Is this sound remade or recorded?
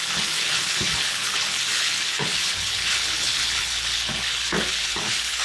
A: remade